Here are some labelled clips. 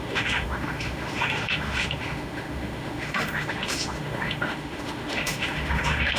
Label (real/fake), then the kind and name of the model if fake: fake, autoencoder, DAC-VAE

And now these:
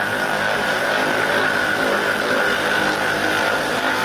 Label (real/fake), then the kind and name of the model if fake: real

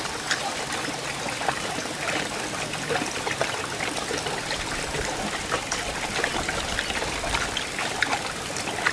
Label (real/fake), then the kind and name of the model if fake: real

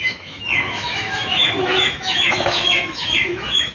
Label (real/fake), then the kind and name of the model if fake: fake, autoencoder, DAC-VAE